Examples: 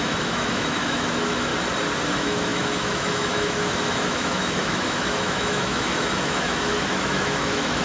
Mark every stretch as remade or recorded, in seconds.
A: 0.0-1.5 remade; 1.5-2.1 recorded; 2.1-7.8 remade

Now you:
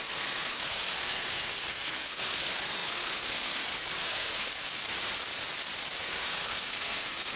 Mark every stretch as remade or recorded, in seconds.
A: 0.0-4.8 remade; 4.8-6.0 recorded; 6.0-7.4 remade